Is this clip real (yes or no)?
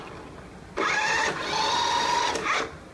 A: yes